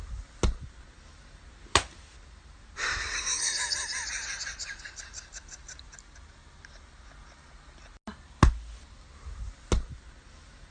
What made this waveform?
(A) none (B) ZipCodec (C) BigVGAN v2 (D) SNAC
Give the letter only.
A